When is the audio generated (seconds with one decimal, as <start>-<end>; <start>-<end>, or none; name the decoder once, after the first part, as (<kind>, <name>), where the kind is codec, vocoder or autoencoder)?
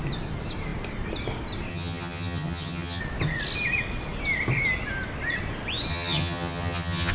1.7-3.0 (vocoder, HiFi-GAN); 5.9-7.1